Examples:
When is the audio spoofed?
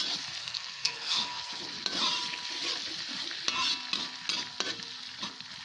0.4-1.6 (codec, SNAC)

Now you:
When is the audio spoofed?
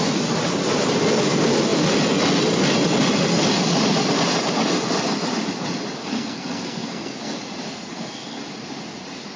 6.0-7.4 (codec, SNAC); 7.9-8.4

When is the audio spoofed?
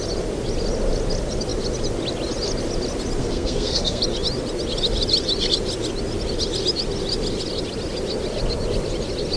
3.2-4.0 (codec, SNAC)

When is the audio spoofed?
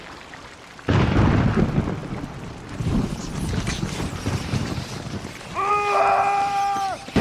none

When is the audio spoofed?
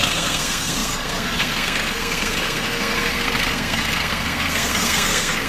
0.0-5.5 (codec, SNAC)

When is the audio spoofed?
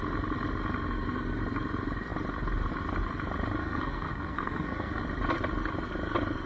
3.6-5.0 (codec, SNAC)